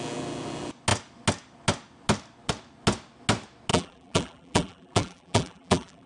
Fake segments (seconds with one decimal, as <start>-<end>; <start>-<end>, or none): 3.7-6.1